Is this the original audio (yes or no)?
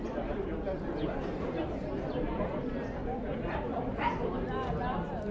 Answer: no